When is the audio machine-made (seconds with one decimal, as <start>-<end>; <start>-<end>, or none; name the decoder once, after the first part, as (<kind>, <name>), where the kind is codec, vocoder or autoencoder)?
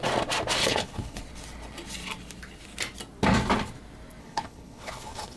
0.6-1.2 (codec, HILCodec); 4.2-5.4